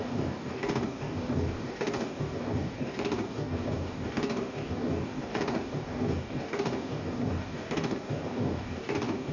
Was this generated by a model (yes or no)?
yes